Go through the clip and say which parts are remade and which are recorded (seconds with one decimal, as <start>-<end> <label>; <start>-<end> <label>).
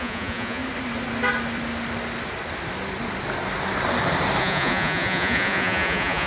0.0-0.6 remade; 0.6-4.4 recorded; 4.4-6.3 remade